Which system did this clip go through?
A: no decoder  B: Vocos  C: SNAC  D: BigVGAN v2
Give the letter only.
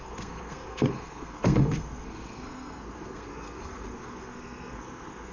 C